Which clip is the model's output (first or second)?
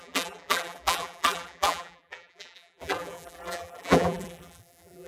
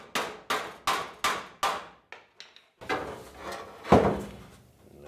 first